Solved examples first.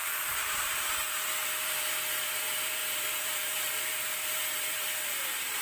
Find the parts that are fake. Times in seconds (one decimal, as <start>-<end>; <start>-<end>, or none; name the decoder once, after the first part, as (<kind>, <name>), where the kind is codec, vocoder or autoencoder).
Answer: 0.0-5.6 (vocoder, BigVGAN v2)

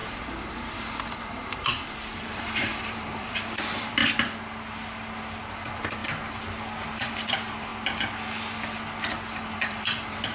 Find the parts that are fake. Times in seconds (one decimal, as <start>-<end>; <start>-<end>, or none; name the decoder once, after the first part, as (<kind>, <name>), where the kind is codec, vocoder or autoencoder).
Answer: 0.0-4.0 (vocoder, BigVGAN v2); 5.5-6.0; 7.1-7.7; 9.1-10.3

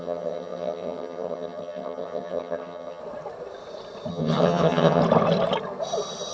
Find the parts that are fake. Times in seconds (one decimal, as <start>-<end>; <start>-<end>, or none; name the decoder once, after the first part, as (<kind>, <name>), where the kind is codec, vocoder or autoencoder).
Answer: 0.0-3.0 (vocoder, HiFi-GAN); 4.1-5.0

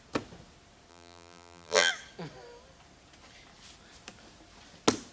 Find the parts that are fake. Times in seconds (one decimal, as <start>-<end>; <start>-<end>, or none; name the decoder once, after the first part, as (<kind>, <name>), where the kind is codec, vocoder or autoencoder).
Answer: 0.9-1.9 (vocoder, BigVGAN v2)

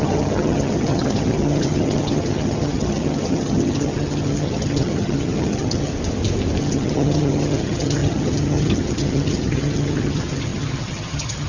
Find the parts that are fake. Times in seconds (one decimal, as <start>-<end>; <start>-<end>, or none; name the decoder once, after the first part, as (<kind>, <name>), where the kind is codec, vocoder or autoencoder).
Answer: 0.0-5.9 (vocoder, HiFi-GAN); 6.6-11.5

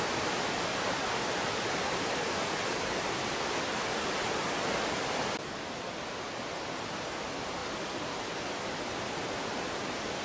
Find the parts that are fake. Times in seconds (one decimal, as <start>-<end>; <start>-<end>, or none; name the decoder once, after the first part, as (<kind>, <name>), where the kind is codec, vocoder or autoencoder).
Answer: none

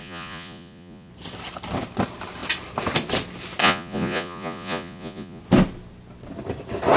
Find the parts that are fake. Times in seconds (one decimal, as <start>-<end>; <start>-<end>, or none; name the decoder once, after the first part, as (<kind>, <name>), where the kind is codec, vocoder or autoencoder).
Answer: 0.0-1.1 (vocoder, Vocos); 3.6-5.4

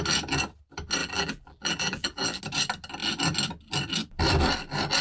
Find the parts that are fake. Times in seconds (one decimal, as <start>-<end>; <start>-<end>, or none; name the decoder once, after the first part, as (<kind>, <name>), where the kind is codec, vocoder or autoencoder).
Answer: 1.0-2.4 (vocoder, BigVGAN v2)